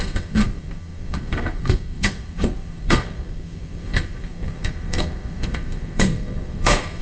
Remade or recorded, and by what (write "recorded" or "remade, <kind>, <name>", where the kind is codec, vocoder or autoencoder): remade, codec, SNAC